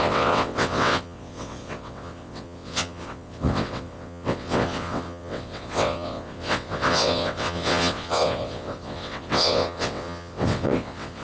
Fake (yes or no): yes